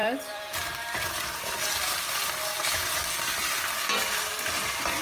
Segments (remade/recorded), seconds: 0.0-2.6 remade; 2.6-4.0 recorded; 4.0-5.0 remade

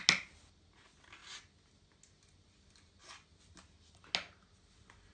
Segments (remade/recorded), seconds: 0.0-5.1 recorded

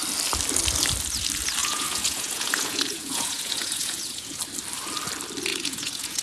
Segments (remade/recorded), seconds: 0.0-1.6 recorded; 1.6-4.4 remade; 4.4-5.5 recorded; 5.5-6.2 remade

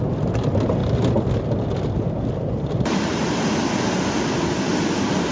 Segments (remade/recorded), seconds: 0.0-5.3 recorded

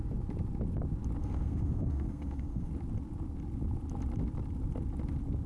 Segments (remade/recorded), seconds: 0.0-1.2 recorded; 1.2-2.7 remade; 2.7-5.5 recorded

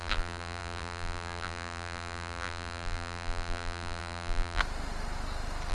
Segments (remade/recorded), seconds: 0.0-4.6 remade; 4.6-5.7 recorded

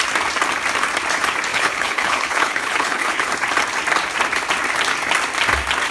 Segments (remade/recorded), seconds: 0.0-1.5 recorded; 1.5-3.3 remade; 3.3-5.9 recorded

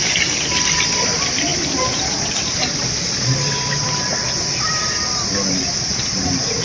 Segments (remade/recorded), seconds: 0.0-6.6 recorded